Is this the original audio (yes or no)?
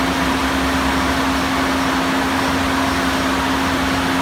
yes